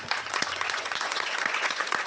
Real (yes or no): no